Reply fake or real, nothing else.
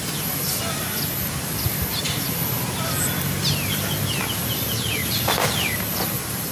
real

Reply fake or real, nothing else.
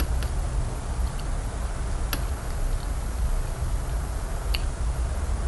real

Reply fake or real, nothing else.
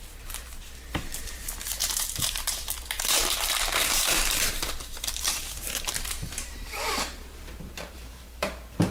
fake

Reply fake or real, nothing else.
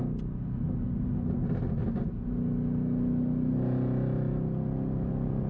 real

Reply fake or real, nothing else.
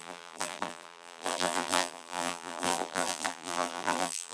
fake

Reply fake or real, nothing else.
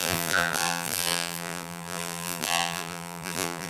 fake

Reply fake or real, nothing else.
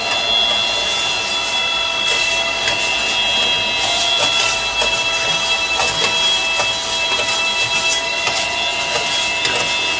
real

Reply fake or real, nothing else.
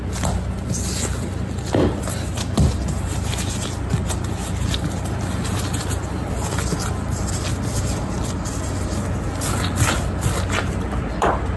real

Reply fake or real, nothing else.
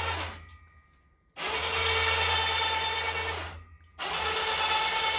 real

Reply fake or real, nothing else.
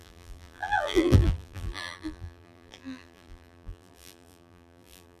fake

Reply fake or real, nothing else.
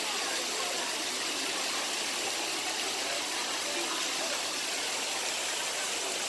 real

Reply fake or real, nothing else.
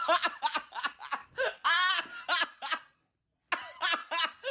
real